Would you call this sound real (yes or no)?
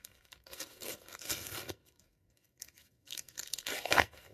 no